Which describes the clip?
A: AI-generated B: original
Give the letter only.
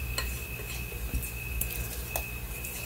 B